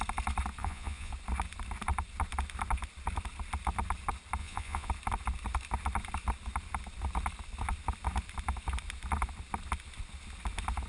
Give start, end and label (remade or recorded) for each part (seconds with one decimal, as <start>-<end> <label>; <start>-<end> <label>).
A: 0.0-0.6 recorded; 0.6-1.1 remade; 1.1-4.4 recorded; 4.4-4.9 remade; 4.9-10.9 recorded